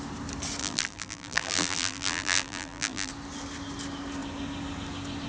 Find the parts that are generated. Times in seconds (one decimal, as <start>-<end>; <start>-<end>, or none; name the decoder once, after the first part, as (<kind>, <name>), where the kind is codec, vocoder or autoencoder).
0.6-3.1 (vocoder, BigVGAN v2)